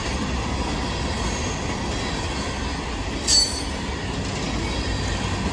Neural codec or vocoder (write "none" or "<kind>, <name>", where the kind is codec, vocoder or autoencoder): none